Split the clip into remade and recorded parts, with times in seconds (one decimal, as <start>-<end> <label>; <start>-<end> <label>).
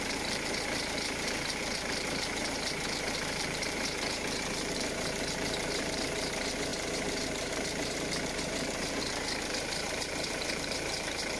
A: 0.0-11.4 remade